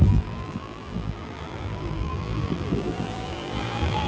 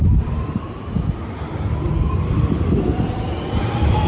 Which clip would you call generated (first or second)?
first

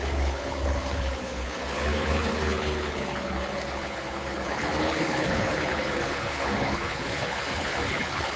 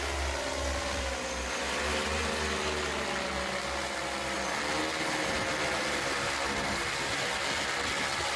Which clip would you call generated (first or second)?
first